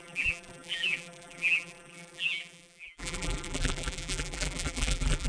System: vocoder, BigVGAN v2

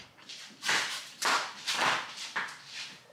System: vocoder, BigVGAN v2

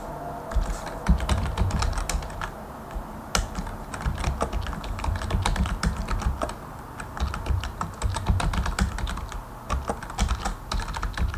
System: none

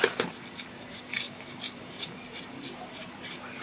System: vocoder, BigVGAN v2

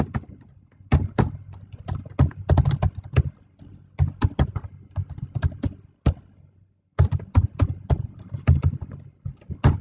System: none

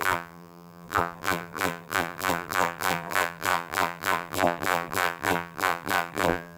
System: vocoder, BigVGAN v2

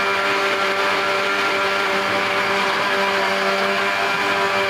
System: none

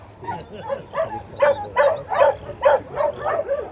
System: none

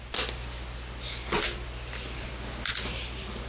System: none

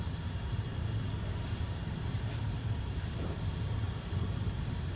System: vocoder, BigVGAN v2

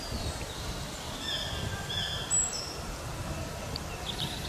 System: none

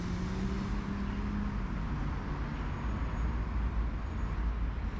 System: none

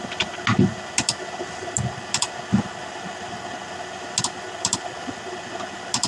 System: none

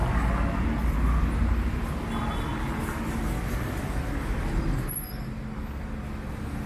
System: none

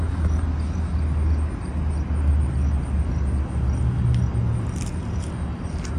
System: none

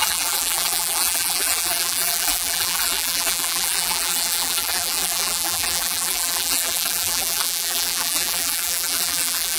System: vocoder, BigVGAN v2